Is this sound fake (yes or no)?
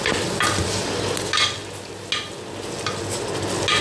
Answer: no